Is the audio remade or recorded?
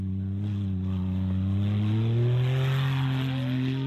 recorded